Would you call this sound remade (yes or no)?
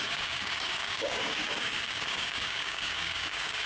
yes